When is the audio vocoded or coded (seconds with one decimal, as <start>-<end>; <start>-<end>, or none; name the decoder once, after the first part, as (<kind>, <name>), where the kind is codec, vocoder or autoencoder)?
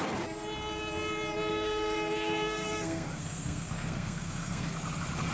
1.5-4.7 (codec, SNAC)